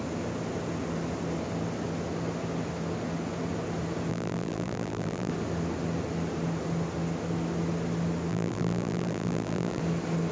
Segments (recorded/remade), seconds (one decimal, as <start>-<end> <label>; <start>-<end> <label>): 0.0-4.1 recorded; 4.1-5.3 remade; 5.3-8.3 recorded; 8.3-9.8 remade; 9.8-10.3 recorded